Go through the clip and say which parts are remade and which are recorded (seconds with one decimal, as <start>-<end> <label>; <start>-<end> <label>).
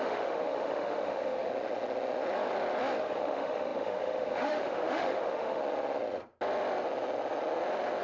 0.0-1.5 remade; 1.5-3.0 recorded; 3.0-5.6 remade; 5.6-8.0 recorded